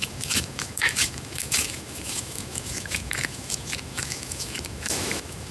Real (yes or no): no